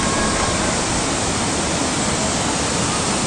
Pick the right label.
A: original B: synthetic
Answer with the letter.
A